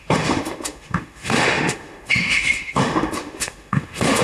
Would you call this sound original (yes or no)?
no